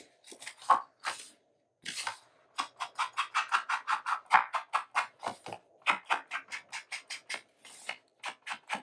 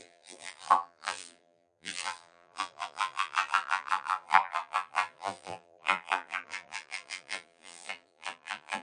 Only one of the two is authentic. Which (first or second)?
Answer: first